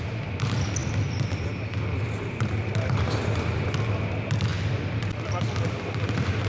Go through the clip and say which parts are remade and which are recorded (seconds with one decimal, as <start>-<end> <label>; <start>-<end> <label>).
0.0-6.5 recorded